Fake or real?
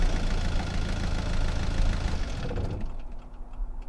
real